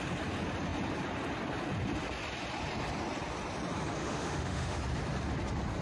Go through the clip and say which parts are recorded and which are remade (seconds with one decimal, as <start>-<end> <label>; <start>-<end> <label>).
0.0-4.0 recorded; 4.0-4.8 remade; 4.8-5.8 recorded